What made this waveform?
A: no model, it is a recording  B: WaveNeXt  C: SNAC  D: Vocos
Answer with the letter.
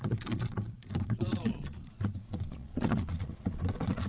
D